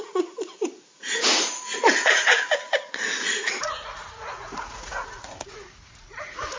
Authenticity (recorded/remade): remade